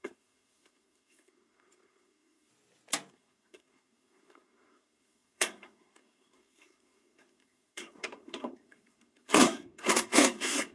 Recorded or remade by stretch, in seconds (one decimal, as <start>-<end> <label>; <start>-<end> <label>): 0.0-2.5 remade; 2.5-3.1 recorded; 3.1-10.7 remade

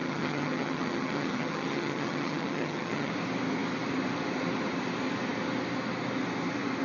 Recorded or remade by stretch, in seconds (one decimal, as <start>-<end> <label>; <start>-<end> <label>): 0.0-3.1 remade; 3.1-6.8 recorded

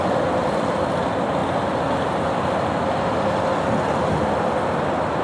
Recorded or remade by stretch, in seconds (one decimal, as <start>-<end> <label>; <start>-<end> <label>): 0.0-5.2 recorded

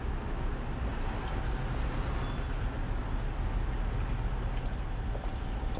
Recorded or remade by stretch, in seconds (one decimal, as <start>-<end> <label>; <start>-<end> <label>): 0.0-5.8 recorded

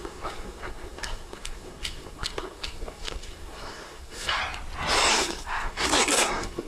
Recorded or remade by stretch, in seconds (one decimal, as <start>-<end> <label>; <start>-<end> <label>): 0.0-4.4 remade; 4.4-5.1 recorded; 5.1-6.7 remade

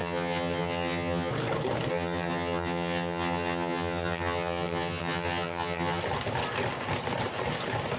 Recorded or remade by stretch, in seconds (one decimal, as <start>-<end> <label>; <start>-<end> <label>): 0.0-1.3 remade; 1.3-1.9 recorded; 1.9-6.0 remade; 6.0-8.0 recorded